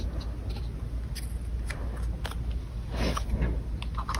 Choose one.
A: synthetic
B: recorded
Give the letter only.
B